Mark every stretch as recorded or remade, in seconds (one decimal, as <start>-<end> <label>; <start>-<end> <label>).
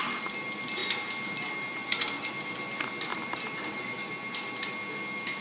0.0-3.1 recorded; 3.1-3.7 remade; 3.7-5.4 recorded